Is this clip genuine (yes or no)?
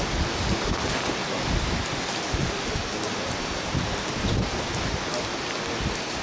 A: yes